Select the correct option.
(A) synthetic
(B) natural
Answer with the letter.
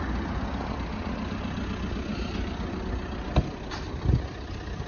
B